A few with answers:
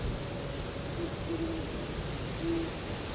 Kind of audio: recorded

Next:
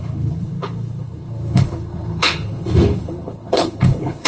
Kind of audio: remade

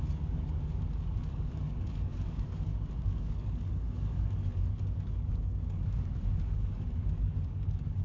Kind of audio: remade